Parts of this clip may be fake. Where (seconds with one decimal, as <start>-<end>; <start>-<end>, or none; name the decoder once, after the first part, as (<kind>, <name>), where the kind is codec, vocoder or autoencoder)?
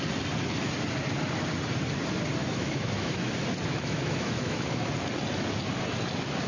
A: 2.4-3.3 (autoencoder, DAC-VAE); 3.7-4.9